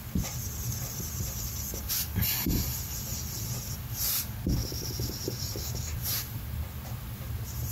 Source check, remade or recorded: remade